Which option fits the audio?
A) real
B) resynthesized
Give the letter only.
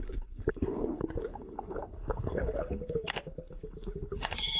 B